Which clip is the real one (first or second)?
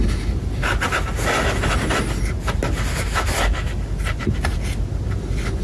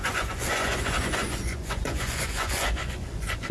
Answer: first